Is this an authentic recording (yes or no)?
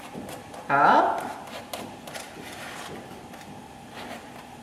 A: no